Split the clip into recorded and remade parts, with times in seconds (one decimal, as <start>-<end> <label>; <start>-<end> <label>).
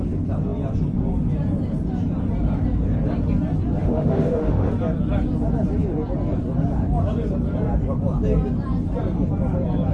0.0-3.8 recorded; 3.8-4.7 remade; 4.7-9.9 recorded